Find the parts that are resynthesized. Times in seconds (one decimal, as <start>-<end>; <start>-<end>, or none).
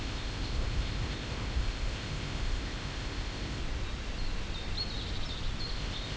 0.0-3.6; 5.7-6.2